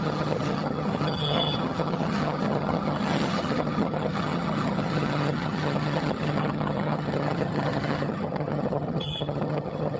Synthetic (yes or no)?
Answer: yes